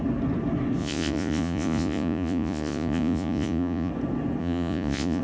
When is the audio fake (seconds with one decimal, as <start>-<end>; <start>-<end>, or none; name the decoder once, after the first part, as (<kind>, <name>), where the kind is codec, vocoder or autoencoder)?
0.8-3.9 (vocoder, Vocos); 4.4-5.2